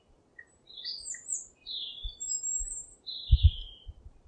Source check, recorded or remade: remade